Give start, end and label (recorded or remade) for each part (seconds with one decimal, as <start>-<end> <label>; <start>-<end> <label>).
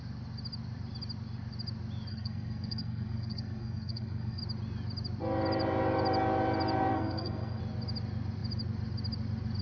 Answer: 0.0-2.1 recorded; 2.1-4.4 remade; 4.4-6.9 recorded; 6.9-7.6 remade; 7.6-9.6 recorded